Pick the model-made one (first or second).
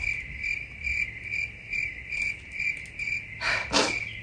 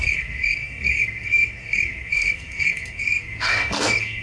second